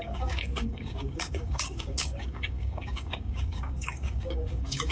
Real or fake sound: fake